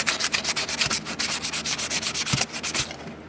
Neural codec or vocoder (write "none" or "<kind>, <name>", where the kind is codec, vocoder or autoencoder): none